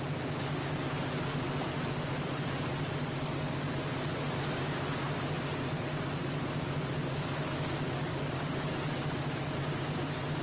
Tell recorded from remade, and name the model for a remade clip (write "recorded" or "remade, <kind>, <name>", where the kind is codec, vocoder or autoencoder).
recorded